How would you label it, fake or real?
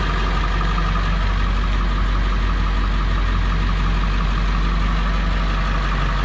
real